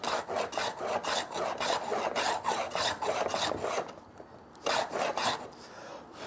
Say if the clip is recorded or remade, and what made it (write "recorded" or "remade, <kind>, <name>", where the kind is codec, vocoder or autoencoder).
recorded